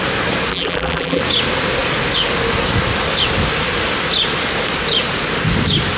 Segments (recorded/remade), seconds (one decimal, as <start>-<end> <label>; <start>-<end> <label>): 0.0-0.5 recorded; 0.5-1.2 remade; 1.2-6.0 recorded